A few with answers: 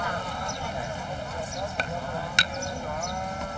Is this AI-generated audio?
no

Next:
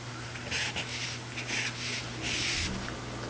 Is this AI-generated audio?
no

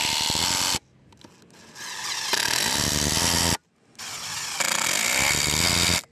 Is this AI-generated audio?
no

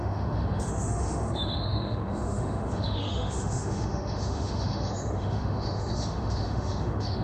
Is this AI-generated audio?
yes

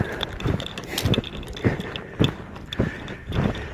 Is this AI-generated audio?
no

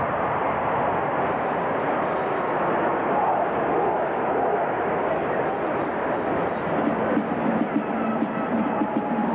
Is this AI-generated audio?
no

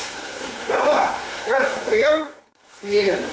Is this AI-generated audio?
yes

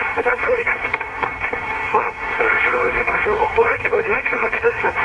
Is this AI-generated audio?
yes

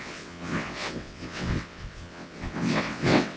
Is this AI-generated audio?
yes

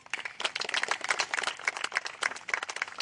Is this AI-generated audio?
no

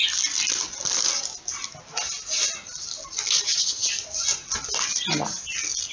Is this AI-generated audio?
no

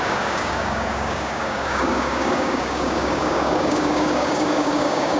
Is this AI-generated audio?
yes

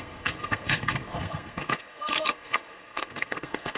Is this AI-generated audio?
yes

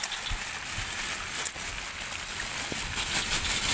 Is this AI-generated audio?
no